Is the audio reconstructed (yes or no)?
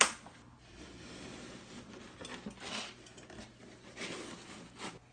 no